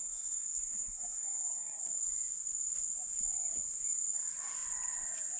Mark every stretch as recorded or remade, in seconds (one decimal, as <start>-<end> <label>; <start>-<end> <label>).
0.0-1.8 remade; 1.8-5.4 recorded